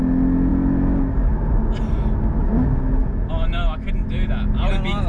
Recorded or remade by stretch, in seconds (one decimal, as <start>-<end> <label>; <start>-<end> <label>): 0.0-5.1 recorded